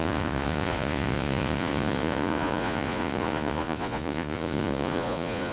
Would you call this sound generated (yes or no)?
yes